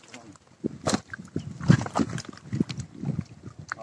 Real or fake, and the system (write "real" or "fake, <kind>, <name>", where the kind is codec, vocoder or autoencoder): real